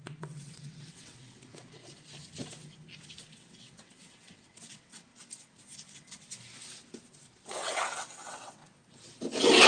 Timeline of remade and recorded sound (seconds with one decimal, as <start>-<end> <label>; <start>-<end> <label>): 0.0-1.8 remade; 1.8-3.2 recorded; 3.2-5.1 remade; 5.1-7.5 recorded; 7.5-8.6 remade; 8.6-9.7 recorded